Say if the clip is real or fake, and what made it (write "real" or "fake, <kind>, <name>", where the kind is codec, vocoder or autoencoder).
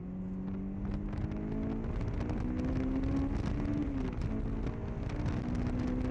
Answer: real